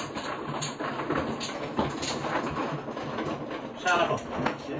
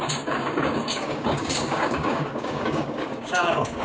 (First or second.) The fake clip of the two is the second